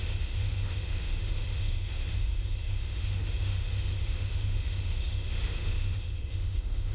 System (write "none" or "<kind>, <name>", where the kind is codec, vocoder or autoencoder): autoencoder, DAC-VAE